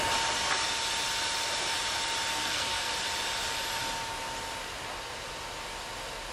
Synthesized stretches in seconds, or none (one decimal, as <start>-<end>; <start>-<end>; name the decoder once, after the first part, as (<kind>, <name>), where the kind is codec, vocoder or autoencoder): 2.3-2.9 (codec, SNAC)